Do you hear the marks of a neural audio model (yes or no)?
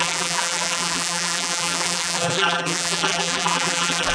yes